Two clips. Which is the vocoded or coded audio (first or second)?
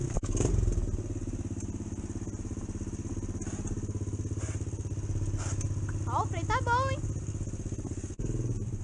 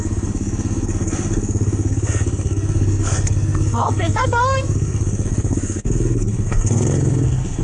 second